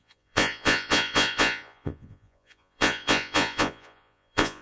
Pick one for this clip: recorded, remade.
remade